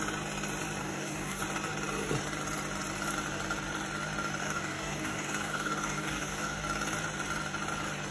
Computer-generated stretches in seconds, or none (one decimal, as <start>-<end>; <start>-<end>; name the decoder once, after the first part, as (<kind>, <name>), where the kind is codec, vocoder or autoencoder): 0.8-1.4 (codec, DAC); 4.4-6.6